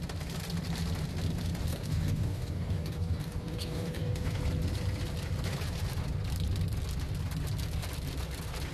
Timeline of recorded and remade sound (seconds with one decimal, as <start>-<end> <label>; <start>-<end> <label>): 0.0-1.7 recorded; 1.7-4.4 remade; 4.4-8.7 recorded